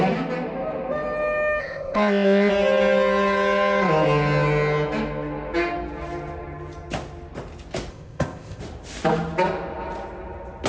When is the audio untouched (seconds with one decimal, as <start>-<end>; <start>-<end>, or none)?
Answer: 0.0-1.6; 2.5-7.9; 8.6-10.7